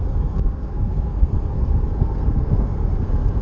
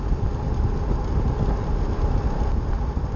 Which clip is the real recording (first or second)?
second